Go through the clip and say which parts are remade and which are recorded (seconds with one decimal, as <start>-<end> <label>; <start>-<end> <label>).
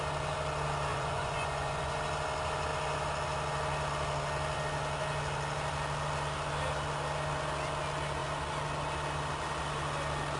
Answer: 0.0-0.9 recorded; 0.9-2.0 remade; 2.0-10.4 recorded